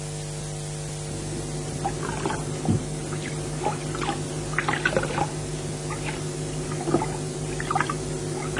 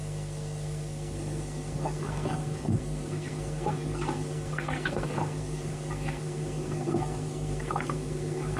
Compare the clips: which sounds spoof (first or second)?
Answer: second